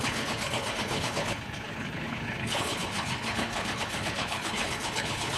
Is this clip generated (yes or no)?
yes